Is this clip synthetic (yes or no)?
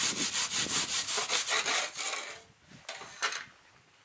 no